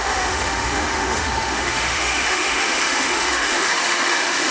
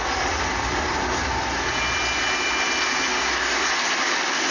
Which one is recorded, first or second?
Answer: second